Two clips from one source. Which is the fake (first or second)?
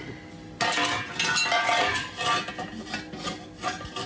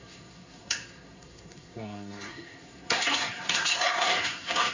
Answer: second